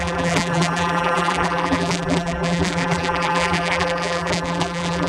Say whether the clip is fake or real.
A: fake